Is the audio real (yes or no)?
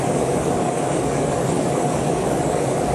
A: no